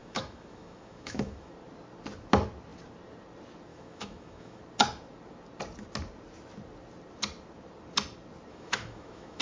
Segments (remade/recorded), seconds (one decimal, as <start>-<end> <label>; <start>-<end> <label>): 0.0-1.5 remade; 1.5-3.7 recorded; 3.7-4.6 remade; 4.6-8.5 recorded; 8.5-9.4 remade